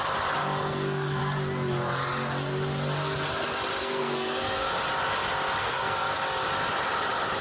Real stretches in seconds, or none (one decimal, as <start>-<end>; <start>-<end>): 0.0-0.4; 1.2-3.8; 4.7-5.6; 6.2-7.4